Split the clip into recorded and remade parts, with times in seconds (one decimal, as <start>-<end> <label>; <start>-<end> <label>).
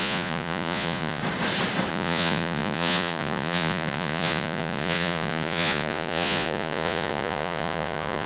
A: 0.0-1.2 remade; 1.2-1.9 recorded; 1.9-8.3 remade